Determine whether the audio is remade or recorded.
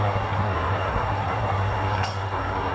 remade